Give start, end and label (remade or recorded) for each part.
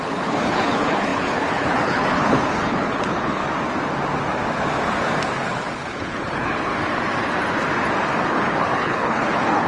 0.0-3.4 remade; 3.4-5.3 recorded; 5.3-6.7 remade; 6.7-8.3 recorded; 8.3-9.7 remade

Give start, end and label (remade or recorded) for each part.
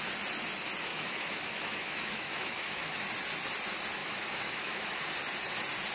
0.0-0.9 recorded; 0.9-3.0 remade; 3.0-4.0 recorded; 4.0-5.0 remade; 5.0-5.9 recorded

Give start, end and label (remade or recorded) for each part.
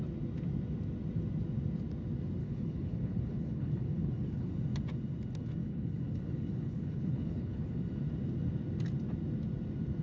0.0-2.4 recorded; 2.4-4.5 remade; 4.5-5.6 recorded; 5.6-7.7 remade; 7.7-10.0 recorded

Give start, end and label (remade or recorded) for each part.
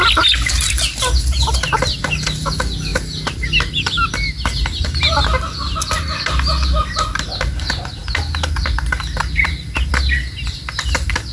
0.0-11.3 recorded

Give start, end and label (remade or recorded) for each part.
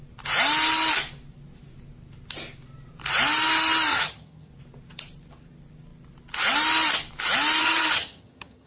0.0-3.9 recorded; 3.9-4.5 remade; 4.5-7.6 recorded; 7.6-8.7 remade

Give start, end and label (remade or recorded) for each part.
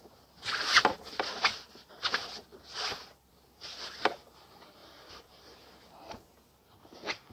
0.0-7.3 recorded